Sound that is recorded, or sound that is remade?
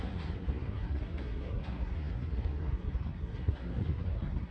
remade